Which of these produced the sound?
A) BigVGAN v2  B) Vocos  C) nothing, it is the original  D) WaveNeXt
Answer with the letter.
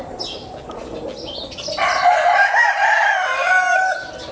C